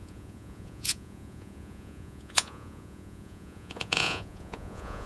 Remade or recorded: remade